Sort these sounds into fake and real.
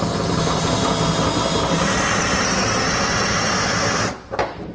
real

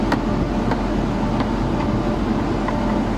real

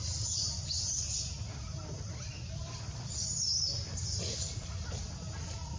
real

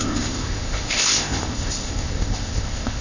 fake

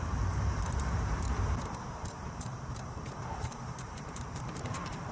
fake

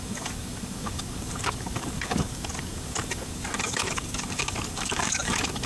fake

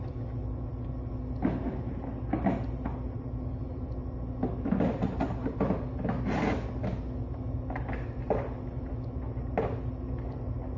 real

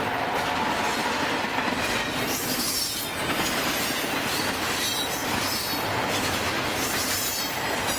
real